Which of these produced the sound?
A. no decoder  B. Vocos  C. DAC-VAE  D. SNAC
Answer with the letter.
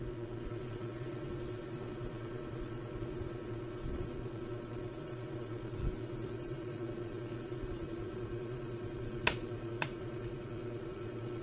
B